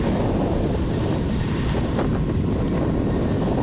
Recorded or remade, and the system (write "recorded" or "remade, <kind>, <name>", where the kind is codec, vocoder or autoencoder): recorded